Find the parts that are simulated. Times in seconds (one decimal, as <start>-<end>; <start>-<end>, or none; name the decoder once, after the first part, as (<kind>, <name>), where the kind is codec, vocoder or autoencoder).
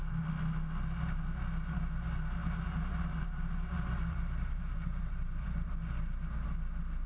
2.4-5.7 (vocoder, BigVGAN v2)